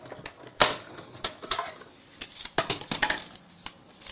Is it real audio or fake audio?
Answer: real